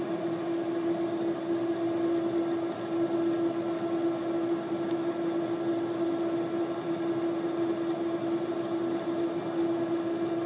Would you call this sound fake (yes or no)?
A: no